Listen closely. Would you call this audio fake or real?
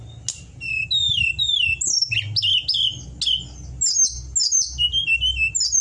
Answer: real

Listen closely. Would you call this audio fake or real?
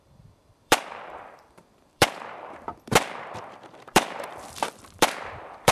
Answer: fake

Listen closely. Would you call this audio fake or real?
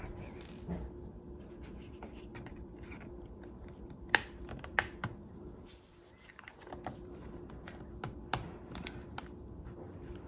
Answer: fake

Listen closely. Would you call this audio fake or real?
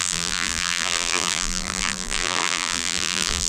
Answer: fake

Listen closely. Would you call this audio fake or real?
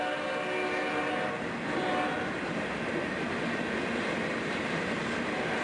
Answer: real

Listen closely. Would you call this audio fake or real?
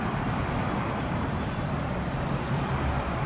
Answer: fake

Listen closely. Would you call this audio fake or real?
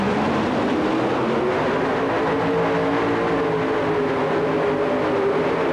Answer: real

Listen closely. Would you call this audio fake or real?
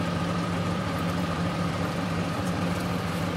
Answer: fake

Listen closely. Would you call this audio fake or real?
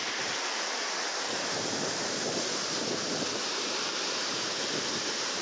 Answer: fake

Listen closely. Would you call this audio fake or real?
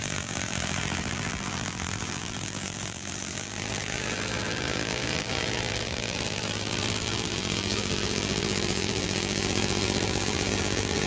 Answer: fake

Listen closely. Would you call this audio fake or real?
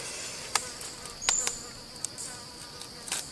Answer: real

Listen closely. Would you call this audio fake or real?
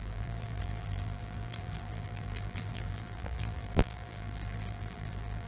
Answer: fake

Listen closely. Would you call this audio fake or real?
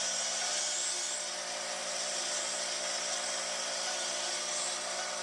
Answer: real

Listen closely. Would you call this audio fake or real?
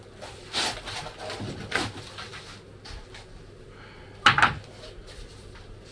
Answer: real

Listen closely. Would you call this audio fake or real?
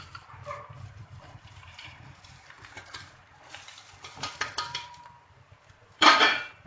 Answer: fake